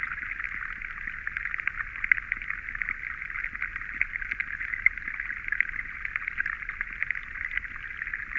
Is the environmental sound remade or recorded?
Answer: recorded